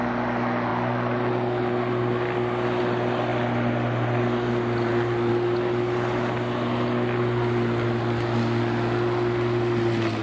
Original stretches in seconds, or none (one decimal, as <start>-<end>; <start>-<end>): 0.0-10.2